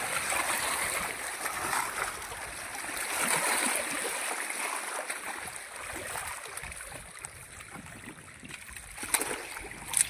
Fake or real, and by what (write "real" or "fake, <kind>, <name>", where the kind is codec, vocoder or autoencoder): real